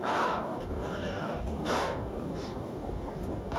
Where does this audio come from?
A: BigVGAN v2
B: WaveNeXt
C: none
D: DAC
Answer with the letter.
D